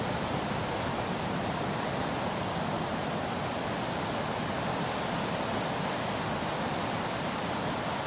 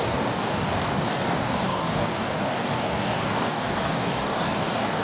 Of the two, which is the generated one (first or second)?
second